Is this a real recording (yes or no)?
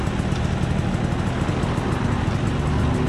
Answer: yes